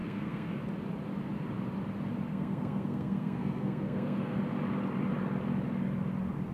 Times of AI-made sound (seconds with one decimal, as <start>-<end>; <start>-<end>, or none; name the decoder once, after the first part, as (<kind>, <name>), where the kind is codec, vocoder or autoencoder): 0.0-0.6 (codec, SNAC); 2.3-4.4